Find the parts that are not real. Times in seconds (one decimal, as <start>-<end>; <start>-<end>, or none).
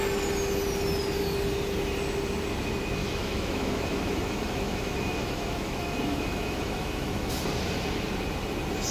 3.0-7.3